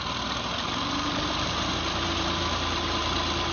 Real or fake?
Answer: fake